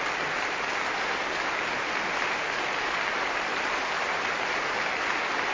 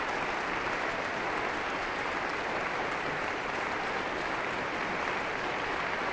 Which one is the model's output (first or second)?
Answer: second